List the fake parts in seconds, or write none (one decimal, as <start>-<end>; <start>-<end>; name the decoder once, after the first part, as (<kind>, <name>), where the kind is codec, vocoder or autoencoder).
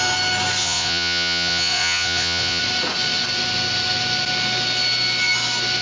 0.6-2.6 (vocoder, Vocos)